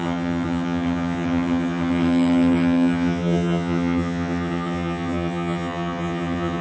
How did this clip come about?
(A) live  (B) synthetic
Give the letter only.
B